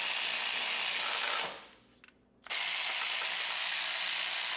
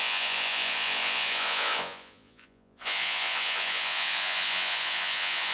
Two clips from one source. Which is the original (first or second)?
first